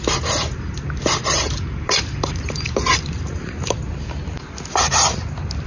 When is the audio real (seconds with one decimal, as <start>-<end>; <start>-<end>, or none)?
0.0-1.2; 3.9-5.7